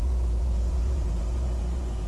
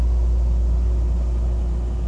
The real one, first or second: second